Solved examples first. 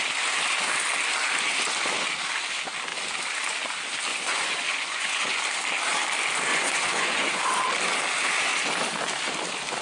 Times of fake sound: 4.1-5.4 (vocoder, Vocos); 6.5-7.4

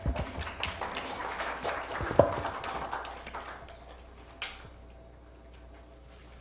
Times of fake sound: 1.2-1.7 (autoencoder, DAC-VAE)

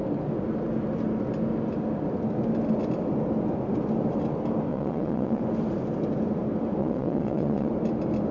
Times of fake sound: 4.7-5.4 (vocoder, WaveNeXt); 6.8-7.7

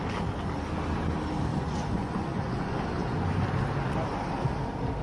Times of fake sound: 1.5-2.8 (vocoder, Vocos)

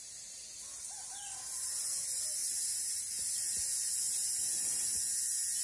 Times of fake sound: 2.4-3.1 (vocoder, BigVGAN v2)

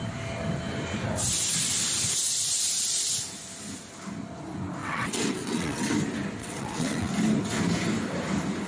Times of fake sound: 4.8-5.9 (vocoder, WaveNeXt); 6.4-7.1

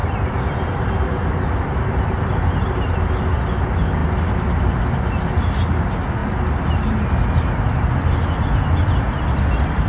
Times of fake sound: none